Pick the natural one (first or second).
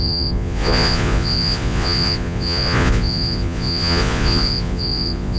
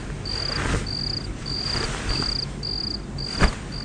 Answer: second